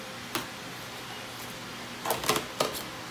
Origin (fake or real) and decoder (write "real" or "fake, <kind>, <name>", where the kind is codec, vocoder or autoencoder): real